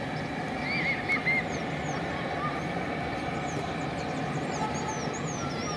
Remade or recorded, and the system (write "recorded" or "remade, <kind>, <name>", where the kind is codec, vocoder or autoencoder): recorded